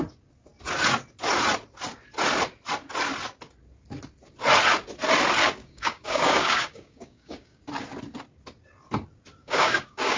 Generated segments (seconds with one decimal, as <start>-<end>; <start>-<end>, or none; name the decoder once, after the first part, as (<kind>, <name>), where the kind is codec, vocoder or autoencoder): 5.6-7.6 (codec, DAC); 9.4-10.2